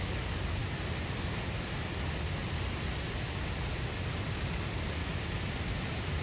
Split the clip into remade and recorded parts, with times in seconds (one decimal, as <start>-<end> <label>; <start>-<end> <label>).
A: 0.0-0.6 remade; 0.6-4.3 recorded; 4.3-5.0 remade; 5.0-6.2 recorded